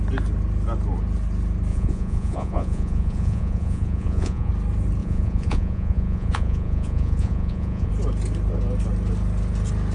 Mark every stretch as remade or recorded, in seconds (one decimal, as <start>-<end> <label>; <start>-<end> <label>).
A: 0.0-1.7 recorded; 1.7-4.5 remade; 4.5-5.0 recorded; 5.0-7.9 remade; 7.9-9.9 recorded